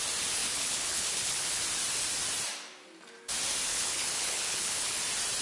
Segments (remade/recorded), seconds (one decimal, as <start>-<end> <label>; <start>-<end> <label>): 0.0-0.4 recorded; 0.4-1.6 remade; 1.6-3.7 recorded; 3.7-5.0 remade; 5.0-5.4 recorded

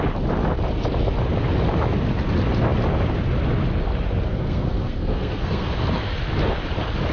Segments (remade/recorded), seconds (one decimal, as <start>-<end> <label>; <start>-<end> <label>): 0.0-4.3 recorded; 4.3-5.7 remade; 5.7-7.1 recorded

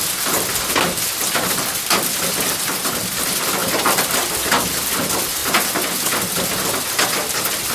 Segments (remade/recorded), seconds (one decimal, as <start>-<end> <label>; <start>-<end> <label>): 0.0-3.6 recorded; 3.6-4.5 remade; 4.5-7.7 recorded

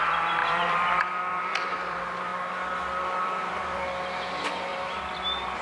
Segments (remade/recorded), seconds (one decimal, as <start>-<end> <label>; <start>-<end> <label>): 0.0-2.3 remade; 2.3-3.0 recorded; 3.0-5.6 remade

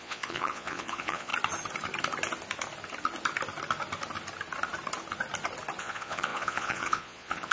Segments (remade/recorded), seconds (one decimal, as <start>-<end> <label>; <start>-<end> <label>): 0.0-1.3 remade; 1.3-5.8 recorded; 5.8-7.5 remade

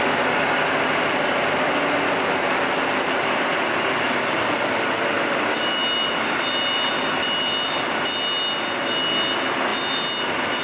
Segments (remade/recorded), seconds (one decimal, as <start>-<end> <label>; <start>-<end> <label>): 0.0-10.6 recorded